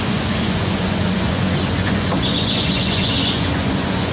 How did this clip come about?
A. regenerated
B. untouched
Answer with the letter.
A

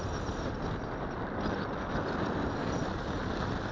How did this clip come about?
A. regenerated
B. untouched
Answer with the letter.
B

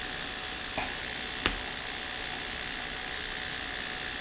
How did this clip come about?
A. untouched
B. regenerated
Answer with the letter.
A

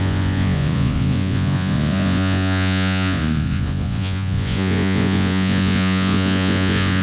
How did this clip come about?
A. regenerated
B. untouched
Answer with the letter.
A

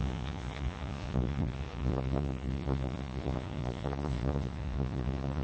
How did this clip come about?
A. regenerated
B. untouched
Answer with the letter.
A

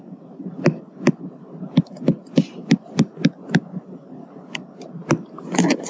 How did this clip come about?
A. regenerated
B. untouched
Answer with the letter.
B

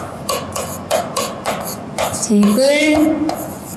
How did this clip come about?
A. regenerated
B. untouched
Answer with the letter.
A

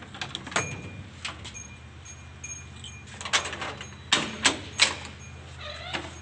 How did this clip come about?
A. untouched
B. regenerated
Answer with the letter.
A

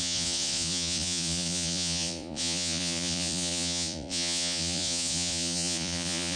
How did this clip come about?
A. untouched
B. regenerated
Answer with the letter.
B